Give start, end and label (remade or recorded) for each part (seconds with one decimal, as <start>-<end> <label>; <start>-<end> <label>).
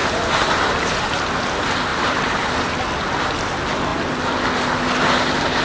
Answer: 0.0-0.9 remade; 0.9-1.9 recorded; 1.9-2.5 remade; 2.5-5.6 recorded